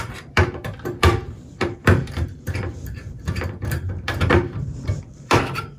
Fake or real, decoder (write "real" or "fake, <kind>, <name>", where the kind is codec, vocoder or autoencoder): fake, vocoder, BigVGAN v2